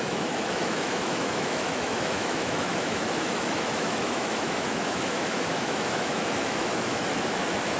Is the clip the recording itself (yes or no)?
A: no